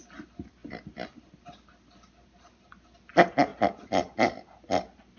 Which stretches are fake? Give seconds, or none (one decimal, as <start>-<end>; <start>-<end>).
none

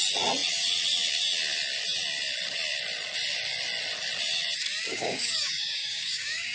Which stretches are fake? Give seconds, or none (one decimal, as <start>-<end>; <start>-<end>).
4.9-6.5

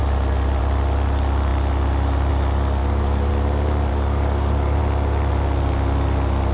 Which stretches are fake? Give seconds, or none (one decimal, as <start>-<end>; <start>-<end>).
2.8-3.3; 3.9-4.8

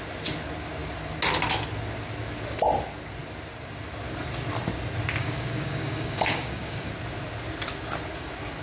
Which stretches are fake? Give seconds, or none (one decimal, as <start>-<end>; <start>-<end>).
5.2-6.9

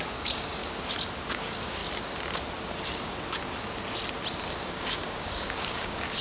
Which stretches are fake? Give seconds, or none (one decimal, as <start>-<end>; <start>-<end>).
0.0-0.6; 1.3-1.8; 4.6-6.2

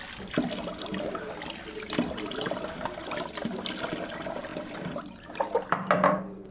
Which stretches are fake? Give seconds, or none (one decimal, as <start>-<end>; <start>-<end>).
none

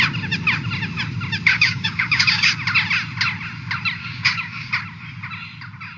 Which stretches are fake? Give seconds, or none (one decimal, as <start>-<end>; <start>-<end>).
1.5-2.5; 4.0-4.7